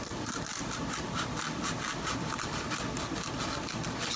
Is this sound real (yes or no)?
yes